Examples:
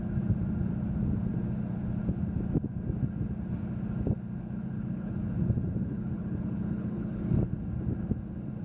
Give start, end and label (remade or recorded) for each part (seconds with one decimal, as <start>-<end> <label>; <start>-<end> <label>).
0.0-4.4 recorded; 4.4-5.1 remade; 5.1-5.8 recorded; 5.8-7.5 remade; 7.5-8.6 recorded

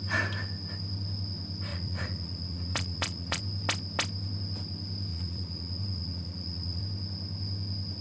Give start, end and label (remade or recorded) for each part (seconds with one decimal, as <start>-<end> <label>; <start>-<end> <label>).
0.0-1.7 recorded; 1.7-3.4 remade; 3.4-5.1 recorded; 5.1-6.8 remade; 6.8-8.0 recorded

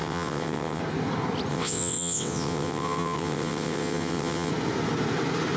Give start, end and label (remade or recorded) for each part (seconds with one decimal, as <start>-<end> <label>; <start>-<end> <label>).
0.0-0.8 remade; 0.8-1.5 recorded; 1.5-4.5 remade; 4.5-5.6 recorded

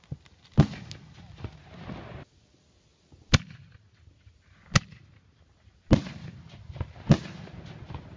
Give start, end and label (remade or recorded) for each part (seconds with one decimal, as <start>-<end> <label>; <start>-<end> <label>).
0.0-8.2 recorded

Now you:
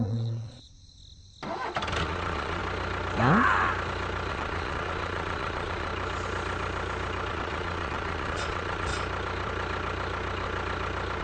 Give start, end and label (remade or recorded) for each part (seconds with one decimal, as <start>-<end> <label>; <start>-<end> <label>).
0.0-0.7 remade; 0.7-2.0 recorded; 2.0-2.6 remade; 2.6-4.3 recorded; 4.3-5.9 remade; 5.9-7.3 recorded; 7.3-8.9 remade; 8.9-11.2 recorded

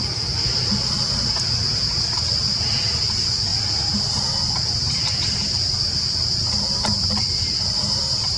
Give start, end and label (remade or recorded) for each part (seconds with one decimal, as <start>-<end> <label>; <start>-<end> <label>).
0.0-8.4 recorded